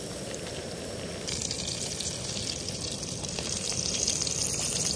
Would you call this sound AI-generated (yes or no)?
yes